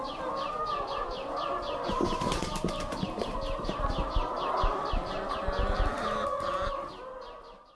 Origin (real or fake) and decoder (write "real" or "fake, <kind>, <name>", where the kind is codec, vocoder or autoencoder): real